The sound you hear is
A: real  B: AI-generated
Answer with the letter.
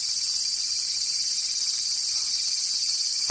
A